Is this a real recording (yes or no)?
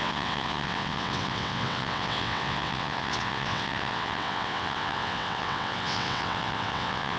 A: no